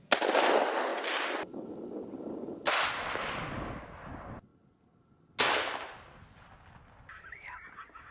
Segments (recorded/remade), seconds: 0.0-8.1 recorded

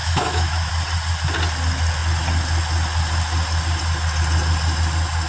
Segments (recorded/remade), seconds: 0.0-0.7 remade; 0.7-5.3 recorded

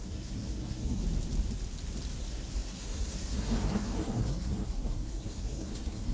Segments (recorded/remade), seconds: 0.0-1.0 remade; 1.0-2.2 recorded; 2.2-6.1 remade

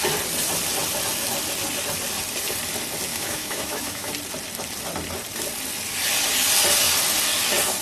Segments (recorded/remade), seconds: 0.0-3.1 recorded; 3.1-4.1 remade; 4.1-7.8 recorded

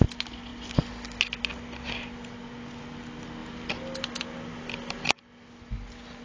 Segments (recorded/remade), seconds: 0.0-6.2 recorded